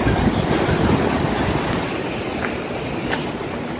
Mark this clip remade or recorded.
recorded